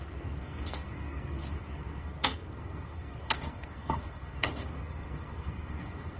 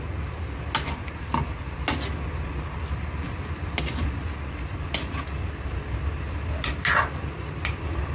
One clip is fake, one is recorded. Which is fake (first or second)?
first